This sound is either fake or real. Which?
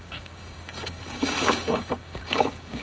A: fake